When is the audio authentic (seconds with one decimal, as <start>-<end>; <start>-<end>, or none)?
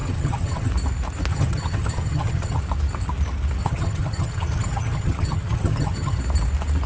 0.7-1.3; 2.6-3.6; 6.2-6.9